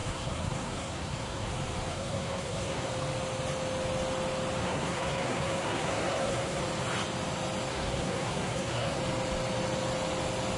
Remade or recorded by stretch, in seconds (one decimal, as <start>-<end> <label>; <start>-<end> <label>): 0.0-1.5 remade; 1.5-1.9 recorded; 1.9-2.9 remade; 2.9-4.6 recorded; 4.6-6.6 remade; 6.6-7.7 recorded; 7.7-9.0 remade; 9.0-10.6 recorded